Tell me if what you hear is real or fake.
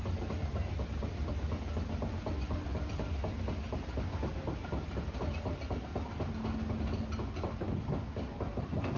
real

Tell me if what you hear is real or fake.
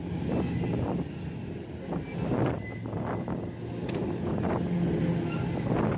real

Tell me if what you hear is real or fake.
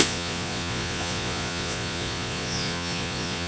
fake